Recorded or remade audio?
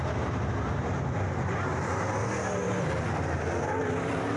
recorded